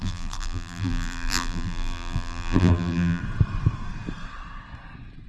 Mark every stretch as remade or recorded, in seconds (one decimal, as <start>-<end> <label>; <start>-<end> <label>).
0.0-3.2 remade; 3.2-5.3 recorded